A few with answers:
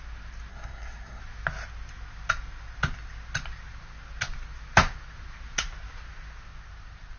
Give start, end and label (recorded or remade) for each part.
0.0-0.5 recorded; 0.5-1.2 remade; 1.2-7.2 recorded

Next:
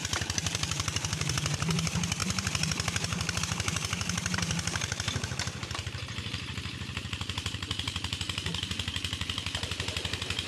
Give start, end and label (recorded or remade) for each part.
0.0-10.5 remade

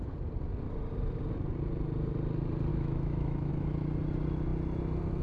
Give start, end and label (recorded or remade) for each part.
0.0-2.7 recorded; 2.7-3.5 remade; 3.5-5.2 recorded

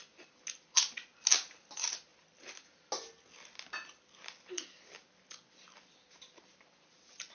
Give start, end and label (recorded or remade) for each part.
0.0-7.3 recorded

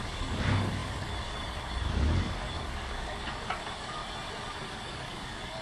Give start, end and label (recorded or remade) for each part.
0.0-4.0 remade; 4.0-4.7 recorded; 4.7-5.6 remade